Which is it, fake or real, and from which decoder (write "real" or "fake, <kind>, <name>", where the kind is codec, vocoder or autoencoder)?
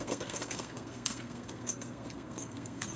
fake, codec, SNAC